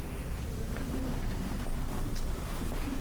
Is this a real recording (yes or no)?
yes